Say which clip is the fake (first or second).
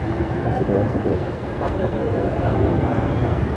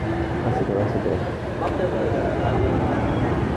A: first